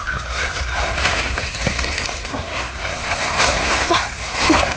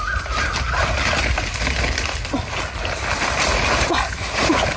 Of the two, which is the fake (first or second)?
first